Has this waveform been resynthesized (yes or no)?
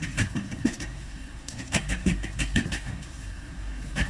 yes